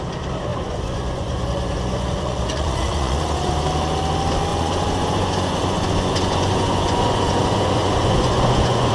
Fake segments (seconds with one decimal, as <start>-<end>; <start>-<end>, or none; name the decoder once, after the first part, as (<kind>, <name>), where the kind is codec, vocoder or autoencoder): 0.5-3.5 (vocoder, Vocos); 4.5-8.9